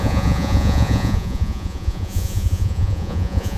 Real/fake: fake